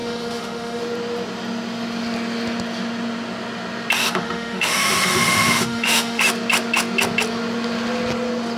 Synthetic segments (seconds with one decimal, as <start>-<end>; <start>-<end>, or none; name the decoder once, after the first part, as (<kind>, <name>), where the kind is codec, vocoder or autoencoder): 0.0-0.8 (autoencoder, DAC-VAE); 4.0-6.2